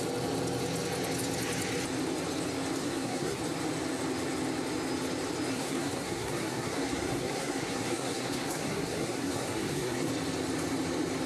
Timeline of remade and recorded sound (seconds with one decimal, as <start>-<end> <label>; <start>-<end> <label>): 0.0-2.8 recorded; 2.8-3.4 remade; 3.4-5.5 recorded; 5.5-10.1 remade; 10.1-11.3 recorded